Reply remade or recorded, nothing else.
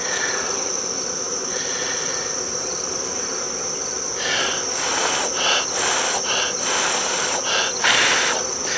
recorded